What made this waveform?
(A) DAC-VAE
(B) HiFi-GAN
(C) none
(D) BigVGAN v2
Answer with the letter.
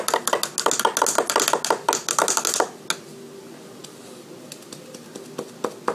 C